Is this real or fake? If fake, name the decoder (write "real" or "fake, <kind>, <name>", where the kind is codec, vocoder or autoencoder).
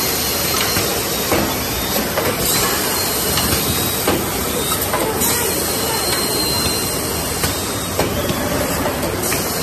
real